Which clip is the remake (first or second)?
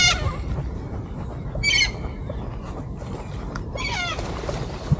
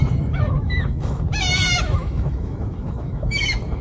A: second